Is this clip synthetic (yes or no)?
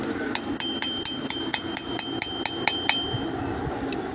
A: no